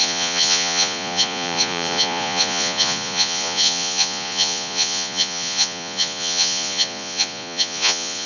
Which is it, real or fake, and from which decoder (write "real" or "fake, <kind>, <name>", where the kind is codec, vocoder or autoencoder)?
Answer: fake, vocoder, Vocos